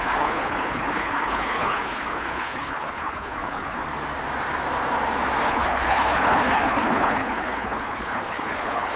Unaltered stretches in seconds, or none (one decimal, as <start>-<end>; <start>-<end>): 3.8-5.4